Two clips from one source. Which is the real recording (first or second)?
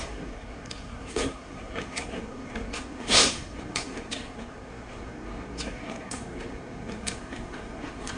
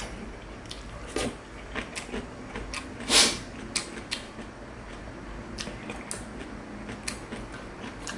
second